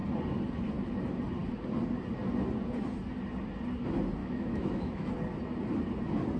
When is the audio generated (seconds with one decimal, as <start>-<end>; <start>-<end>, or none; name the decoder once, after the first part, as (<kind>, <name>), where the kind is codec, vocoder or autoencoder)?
4.2-5.1 (autoencoder, DAC-VAE)